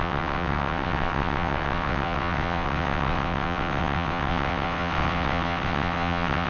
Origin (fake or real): fake